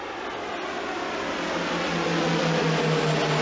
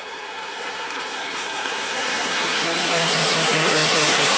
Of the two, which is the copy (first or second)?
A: second